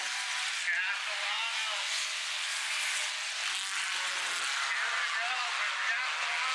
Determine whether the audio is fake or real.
real